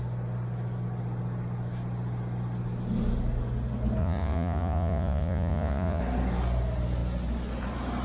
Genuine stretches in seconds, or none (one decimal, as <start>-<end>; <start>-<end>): 0.0-4.0; 6.0-8.0